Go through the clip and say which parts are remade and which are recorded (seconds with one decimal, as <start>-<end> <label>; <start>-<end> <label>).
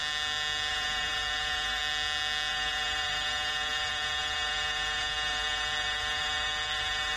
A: 0.0-0.7 recorded; 0.7-1.8 remade; 1.8-2.5 recorded; 2.5-7.2 remade